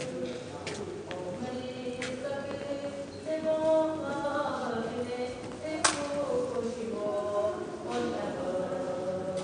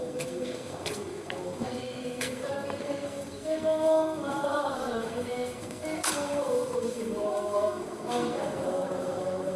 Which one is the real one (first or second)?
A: first